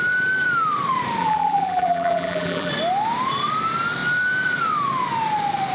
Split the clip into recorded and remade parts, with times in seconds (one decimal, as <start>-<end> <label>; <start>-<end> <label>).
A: 0.0-1.2 recorded; 1.2-2.7 remade; 2.7-5.7 recorded